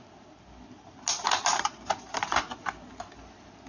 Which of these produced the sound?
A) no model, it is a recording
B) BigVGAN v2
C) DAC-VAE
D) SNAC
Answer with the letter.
A